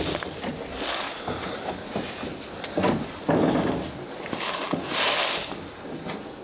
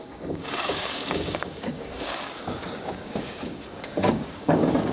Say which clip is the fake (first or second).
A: second